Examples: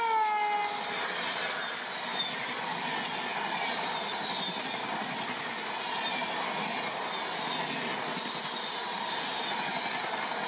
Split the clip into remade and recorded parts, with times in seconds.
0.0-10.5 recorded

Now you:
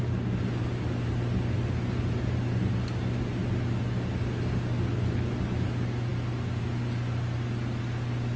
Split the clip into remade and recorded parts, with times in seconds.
0.0-8.4 recorded

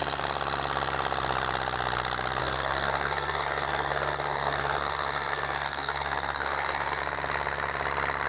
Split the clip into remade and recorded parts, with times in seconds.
0.0-2.4 recorded; 2.4-7.0 remade; 7.0-8.3 recorded

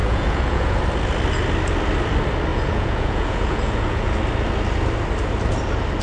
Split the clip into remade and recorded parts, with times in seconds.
0.0-0.8 remade; 0.8-2.5 recorded; 2.5-4.2 remade; 4.2-6.0 recorded

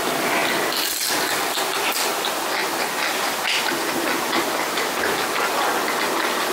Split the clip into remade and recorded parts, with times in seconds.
0.0-6.5 recorded

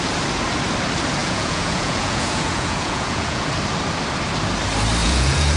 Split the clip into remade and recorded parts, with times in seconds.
0.0-1.2 recorded; 1.2-3.5 remade; 3.5-5.0 recorded; 5.0-5.6 remade

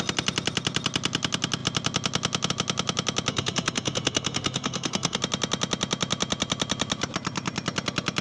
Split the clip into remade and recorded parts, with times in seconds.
0.0-3.3 recorded; 3.3-5.2 remade; 5.2-8.2 recorded